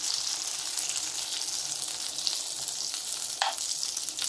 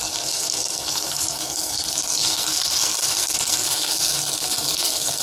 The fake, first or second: second